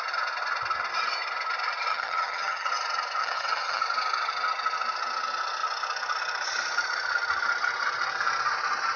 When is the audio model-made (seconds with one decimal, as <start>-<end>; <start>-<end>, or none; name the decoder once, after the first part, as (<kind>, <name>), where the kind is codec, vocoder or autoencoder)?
1.9-2.7 (vocoder, HiFi-GAN); 3.2-3.8

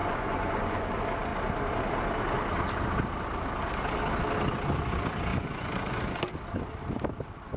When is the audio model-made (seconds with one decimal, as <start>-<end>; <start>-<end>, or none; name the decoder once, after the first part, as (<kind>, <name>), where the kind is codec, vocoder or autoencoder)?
0.0-0.9 (vocoder, Vocos); 5.3-6.2

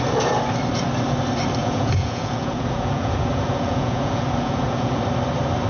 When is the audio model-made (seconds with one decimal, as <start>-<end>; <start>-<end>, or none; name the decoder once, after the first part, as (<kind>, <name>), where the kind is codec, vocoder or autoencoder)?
1.6-5.0 (vocoder, Vocos)